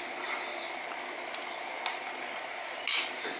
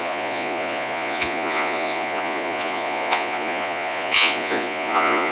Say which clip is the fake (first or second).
second